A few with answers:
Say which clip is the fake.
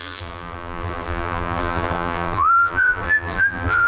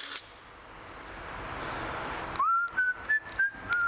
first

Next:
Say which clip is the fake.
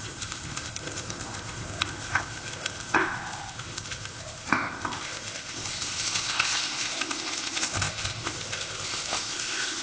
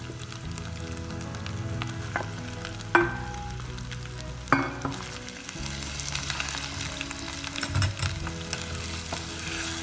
first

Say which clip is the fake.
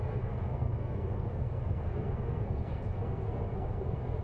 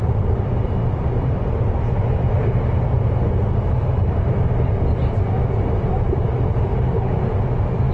first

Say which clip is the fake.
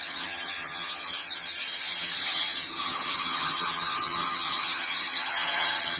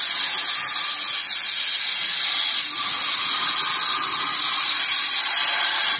first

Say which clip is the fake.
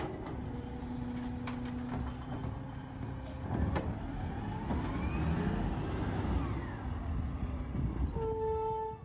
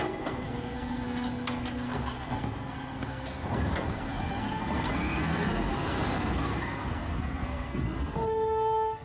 second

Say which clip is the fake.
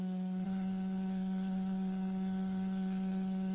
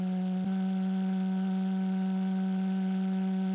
first